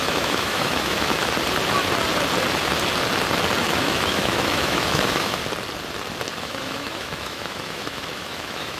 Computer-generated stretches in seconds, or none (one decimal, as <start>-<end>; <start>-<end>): 0.0-1.2; 3.6-5.4; 6.4-8.8